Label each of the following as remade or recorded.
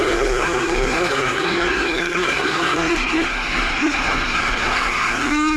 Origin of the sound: remade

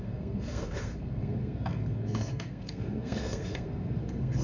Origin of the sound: remade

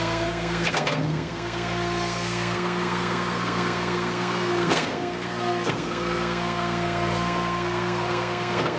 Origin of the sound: remade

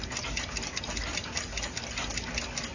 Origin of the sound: recorded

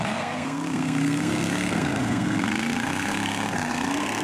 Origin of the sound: remade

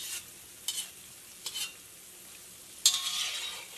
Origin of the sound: recorded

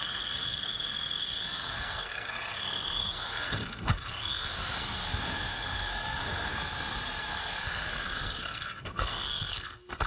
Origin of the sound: remade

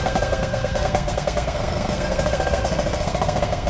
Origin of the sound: remade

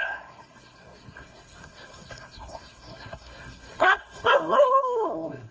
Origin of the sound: remade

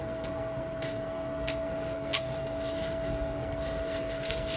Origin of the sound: remade